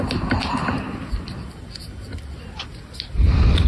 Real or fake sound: real